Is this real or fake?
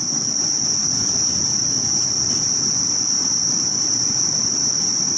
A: real